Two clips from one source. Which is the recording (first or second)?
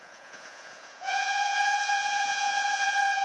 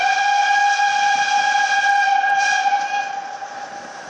second